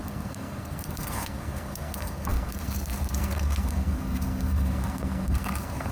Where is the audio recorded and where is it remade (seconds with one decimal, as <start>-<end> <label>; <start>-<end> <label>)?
0.0-5.9 remade